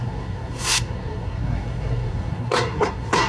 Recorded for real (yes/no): no